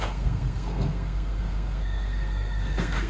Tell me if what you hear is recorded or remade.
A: remade